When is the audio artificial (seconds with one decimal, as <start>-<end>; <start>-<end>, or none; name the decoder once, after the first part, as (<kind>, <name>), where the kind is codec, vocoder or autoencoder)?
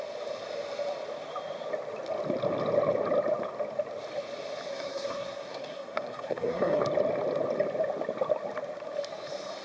4.7-6.8 (codec, SNAC)